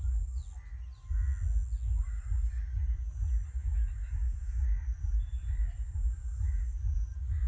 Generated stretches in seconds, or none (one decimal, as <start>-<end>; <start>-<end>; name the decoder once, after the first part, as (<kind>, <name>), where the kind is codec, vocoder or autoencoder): 0.0-0.4 (vocoder, BigVGAN v2); 2.0-7.5